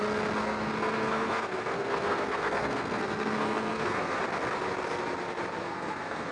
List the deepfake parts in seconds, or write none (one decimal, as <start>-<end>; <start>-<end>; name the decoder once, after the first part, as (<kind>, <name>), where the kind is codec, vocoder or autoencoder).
0.4-4.2 (codec, SNAC); 5.6-6.3